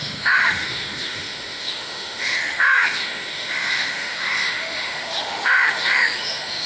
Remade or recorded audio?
remade